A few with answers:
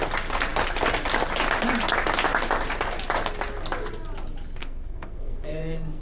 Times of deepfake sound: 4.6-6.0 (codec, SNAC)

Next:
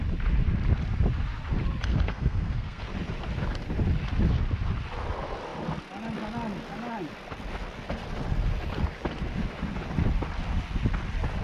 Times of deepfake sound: 1.9-2.9 (codec, SNAC)

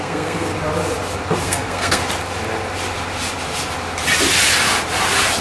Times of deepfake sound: 0.0-0.5 (codec, SNAC); 1.4-2.0

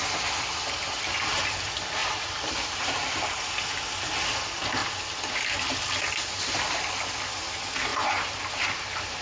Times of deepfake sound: 2.0-3.4 (vocoder, BigVGAN v2); 7.9-9.2

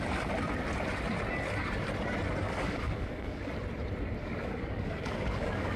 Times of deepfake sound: 2.4-3.5 (codec, DAC); 4.2-5.8

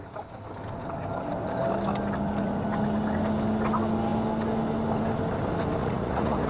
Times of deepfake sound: 5.8-6.5 (vocoder, Vocos)

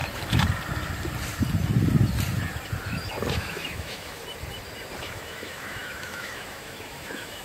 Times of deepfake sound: 3.3-4.2 (autoencoder, DAC-VAE); 5.0-7.4